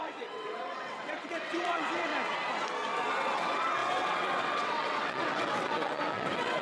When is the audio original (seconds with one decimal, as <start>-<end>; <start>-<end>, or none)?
2.1-3.1